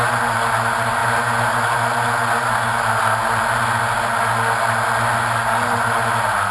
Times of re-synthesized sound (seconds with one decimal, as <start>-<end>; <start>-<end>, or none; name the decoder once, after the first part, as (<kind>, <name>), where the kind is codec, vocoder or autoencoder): none